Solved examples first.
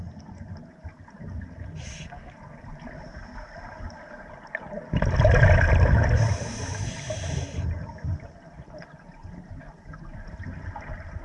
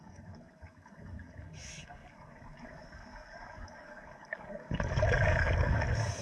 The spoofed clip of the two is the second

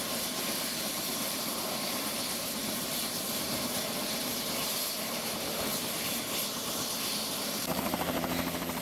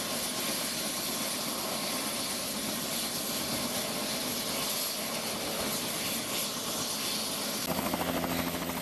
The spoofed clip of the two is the first